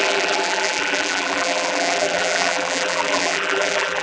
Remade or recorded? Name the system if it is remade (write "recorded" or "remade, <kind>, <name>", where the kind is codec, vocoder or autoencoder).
remade, vocoder, BigVGAN v2